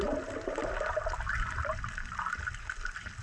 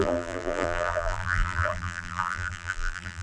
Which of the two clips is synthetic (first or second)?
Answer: second